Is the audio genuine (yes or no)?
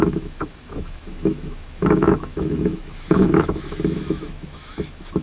no